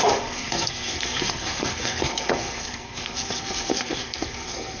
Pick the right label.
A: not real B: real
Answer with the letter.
A